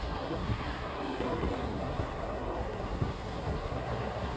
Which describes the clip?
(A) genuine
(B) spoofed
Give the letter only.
B